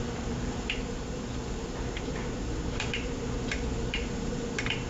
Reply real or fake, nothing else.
fake